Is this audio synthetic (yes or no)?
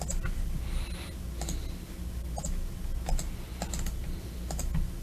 no